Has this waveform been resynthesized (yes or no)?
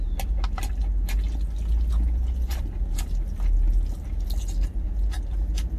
no